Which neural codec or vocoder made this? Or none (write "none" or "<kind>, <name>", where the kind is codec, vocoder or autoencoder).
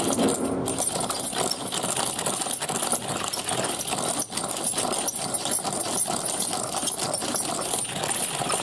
none